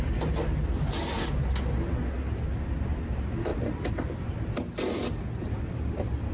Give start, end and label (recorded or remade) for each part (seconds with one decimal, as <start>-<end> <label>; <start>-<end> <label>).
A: 0.0-6.3 recorded